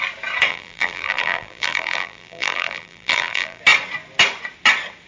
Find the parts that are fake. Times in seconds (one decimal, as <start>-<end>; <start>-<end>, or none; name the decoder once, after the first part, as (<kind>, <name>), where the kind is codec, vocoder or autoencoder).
0.5-3.6 (vocoder, BigVGAN v2)